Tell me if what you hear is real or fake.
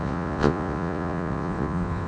fake